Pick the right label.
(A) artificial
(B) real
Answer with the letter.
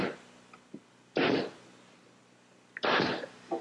B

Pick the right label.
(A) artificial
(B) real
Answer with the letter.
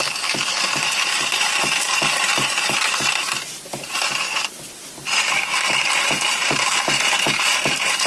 A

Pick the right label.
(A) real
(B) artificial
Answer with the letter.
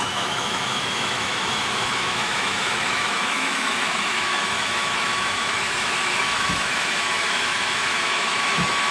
B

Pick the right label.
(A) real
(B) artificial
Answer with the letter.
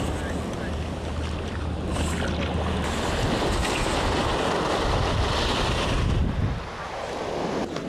A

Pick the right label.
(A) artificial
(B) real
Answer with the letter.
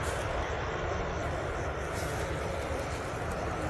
B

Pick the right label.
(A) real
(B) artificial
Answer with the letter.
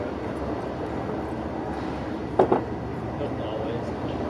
A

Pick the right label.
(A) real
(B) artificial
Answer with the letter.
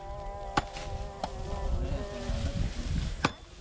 A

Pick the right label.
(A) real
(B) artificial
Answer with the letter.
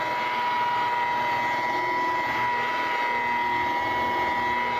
A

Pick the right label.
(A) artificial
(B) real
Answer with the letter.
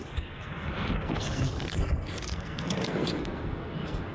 A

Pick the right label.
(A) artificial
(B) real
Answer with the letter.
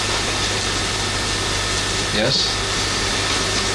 B